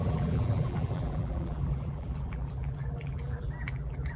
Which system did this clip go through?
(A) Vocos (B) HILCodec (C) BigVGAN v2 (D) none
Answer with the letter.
C